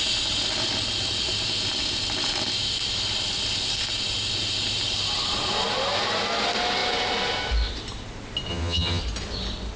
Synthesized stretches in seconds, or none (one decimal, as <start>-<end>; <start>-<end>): 8.5-9.0

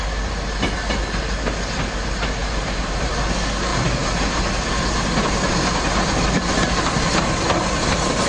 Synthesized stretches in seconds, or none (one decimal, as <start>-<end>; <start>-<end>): 2.4-3.1; 3.7-5.9

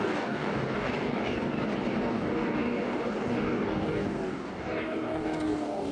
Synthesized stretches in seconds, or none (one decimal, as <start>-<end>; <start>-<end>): 0.0-1.4; 2.1-5.9

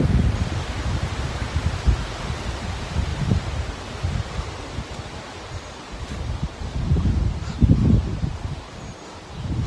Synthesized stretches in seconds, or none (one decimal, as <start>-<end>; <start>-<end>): none

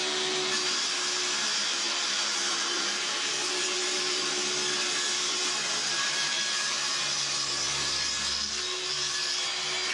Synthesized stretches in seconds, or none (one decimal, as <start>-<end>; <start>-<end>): 1.7-4.4; 5.3-6.9

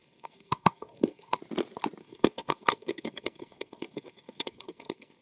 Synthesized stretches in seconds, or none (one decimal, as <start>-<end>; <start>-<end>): 0.0-1.4; 2.0-5.2

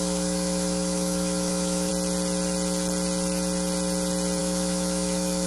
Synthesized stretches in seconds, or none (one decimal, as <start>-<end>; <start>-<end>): 0.0-1.9; 4.4-5.5